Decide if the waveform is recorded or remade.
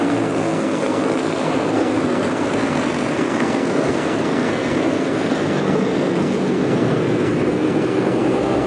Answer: remade